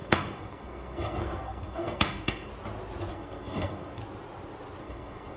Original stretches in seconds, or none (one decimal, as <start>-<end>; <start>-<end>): 2.5-3.1; 4.0-4.8